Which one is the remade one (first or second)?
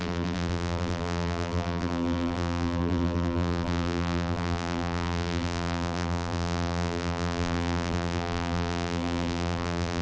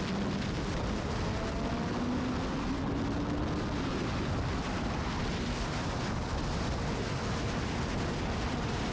first